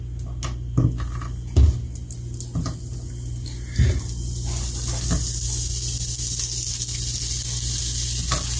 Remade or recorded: recorded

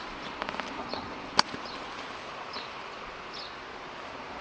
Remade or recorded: recorded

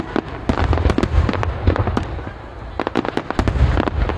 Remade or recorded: recorded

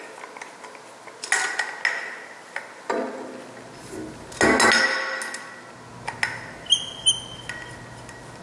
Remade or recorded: recorded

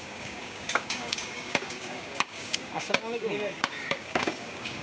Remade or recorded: remade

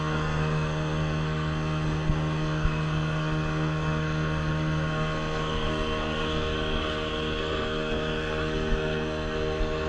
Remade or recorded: remade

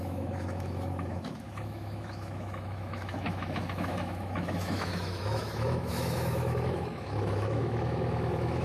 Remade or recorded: remade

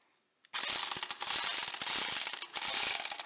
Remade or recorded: recorded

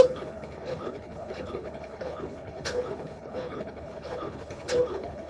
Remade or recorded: remade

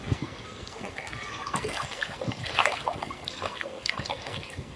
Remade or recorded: remade